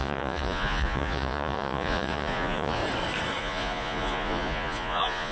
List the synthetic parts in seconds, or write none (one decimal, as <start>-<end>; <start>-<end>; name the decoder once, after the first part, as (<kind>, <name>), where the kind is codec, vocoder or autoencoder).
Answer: 0.0-2.8 (vocoder, Vocos); 3.4-5.3